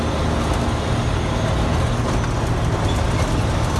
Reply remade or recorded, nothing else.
recorded